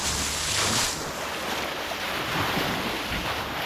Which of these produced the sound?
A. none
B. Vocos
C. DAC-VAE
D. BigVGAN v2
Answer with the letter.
A